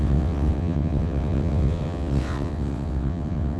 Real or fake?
fake